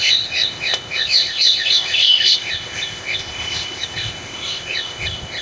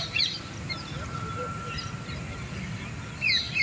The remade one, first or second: first